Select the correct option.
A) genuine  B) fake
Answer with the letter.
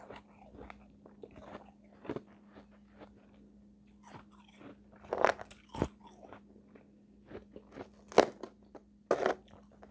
A